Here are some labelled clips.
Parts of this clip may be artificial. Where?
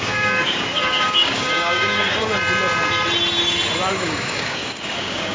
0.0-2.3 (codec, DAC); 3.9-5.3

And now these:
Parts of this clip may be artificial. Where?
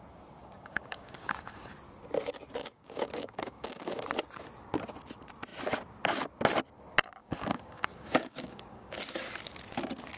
0.4-1.7 (codec, DAC); 2.6-4.0; 7.2-9.0